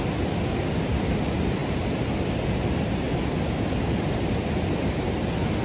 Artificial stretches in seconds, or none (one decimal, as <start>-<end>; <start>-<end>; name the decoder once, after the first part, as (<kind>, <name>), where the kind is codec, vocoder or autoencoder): none